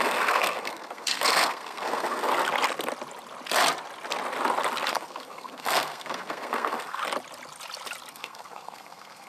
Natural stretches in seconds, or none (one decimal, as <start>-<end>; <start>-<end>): 2.3-4.9; 7.0-8.1